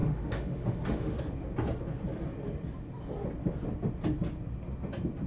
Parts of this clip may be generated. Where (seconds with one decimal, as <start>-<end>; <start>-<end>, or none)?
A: 0.0-1.2